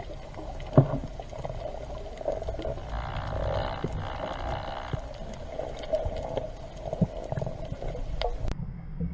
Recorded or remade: recorded